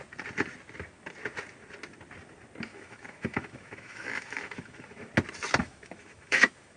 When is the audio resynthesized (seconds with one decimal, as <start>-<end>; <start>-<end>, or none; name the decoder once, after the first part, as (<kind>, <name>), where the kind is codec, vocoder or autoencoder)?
2.7-5.1 (autoencoder, DAC-VAE); 5.6-6.8